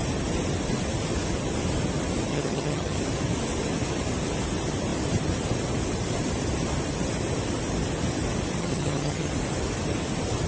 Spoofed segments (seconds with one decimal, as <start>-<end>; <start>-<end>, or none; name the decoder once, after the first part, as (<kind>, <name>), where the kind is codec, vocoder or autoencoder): 2.3-3.0 (vocoder, HiFi-GAN); 8.6-9.3